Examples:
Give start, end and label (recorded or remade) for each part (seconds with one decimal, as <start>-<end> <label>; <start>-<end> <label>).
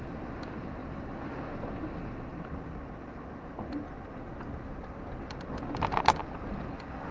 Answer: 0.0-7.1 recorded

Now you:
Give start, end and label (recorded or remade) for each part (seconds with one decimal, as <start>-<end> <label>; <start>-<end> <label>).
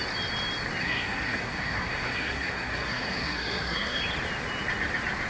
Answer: 0.0-0.8 recorded; 0.8-4.0 remade; 4.0-5.3 recorded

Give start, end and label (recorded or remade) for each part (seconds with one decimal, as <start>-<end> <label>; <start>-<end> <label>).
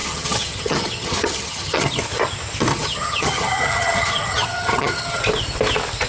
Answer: 0.0-2.0 remade; 2.0-2.7 recorded; 2.7-5.2 remade; 5.2-6.1 recorded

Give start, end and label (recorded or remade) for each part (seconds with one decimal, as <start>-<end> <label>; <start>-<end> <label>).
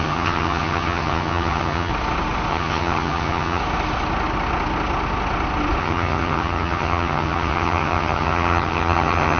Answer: 0.0-1.9 remade; 1.9-2.5 recorded; 2.5-3.6 remade; 3.6-5.8 recorded; 5.8-9.4 remade